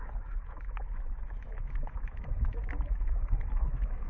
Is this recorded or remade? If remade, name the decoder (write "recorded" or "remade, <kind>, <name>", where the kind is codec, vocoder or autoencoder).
remade, autoencoder, DAC-VAE